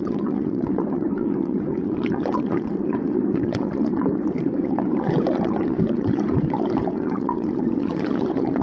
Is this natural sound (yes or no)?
no